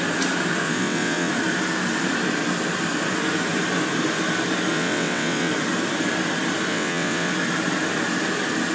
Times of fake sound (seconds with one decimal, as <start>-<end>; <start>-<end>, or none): 0.6-1.3; 4.7-5.5; 6.7-7.3